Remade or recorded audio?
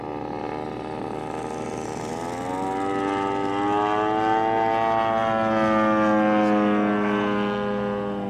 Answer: recorded